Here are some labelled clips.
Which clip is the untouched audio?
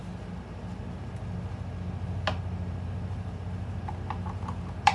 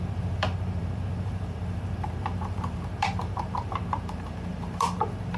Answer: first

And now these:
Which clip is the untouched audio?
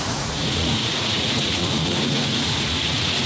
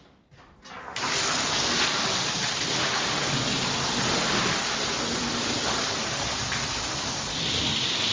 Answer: second